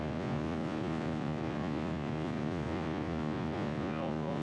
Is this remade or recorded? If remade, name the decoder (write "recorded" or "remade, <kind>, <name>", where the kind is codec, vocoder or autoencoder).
remade, vocoder, Vocos